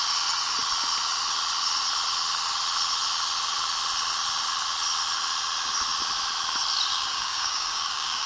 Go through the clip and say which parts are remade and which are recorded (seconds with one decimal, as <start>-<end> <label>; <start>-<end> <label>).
0.0-6.9 recorded; 6.9-8.3 remade